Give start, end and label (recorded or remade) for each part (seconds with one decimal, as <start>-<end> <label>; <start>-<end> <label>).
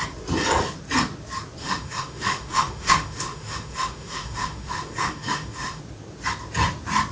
0.0-1.6 recorded; 1.6-5.8 remade; 5.8-7.1 recorded